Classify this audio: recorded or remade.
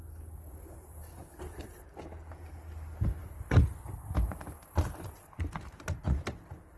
recorded